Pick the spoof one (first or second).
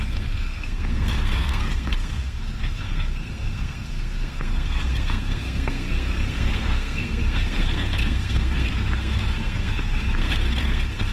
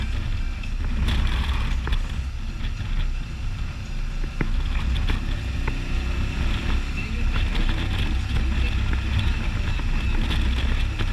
first